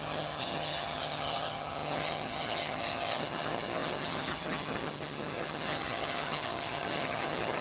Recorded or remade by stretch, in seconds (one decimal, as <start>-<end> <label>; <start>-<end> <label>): 0.0-7.6 remade